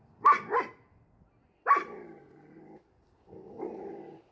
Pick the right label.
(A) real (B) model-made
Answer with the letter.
A